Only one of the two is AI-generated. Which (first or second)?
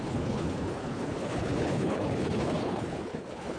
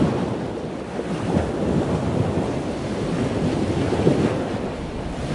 first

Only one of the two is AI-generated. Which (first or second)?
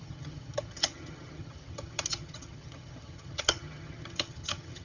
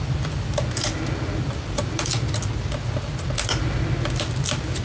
first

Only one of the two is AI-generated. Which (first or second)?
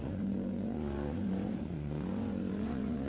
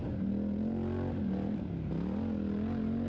first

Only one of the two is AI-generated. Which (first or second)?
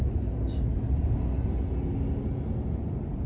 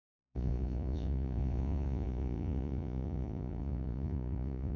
second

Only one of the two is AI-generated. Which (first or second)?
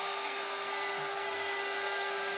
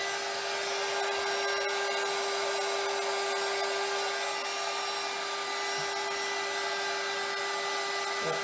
first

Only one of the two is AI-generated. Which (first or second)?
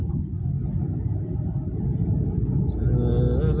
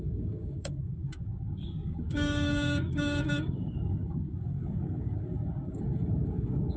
second